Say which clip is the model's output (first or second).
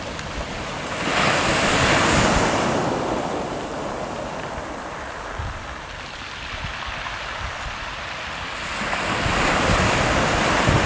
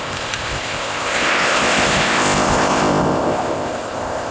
second